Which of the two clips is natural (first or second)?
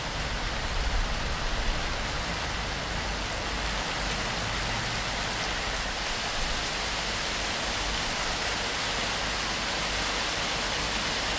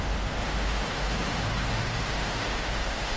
first